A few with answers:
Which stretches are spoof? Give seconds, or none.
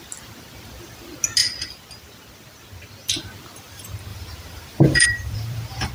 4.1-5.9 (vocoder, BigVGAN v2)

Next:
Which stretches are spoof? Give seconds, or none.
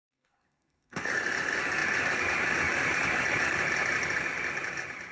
0.0-1.1 (codec, SNAC)